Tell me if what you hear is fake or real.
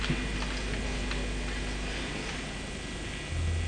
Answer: real